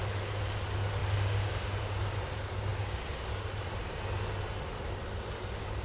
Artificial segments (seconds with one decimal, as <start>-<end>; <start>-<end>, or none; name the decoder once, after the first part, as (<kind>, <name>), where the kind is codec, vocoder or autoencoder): none